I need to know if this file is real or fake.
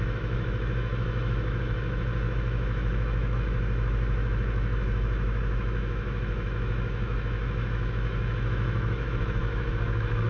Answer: fake